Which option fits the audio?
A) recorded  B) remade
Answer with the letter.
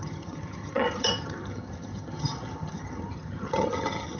B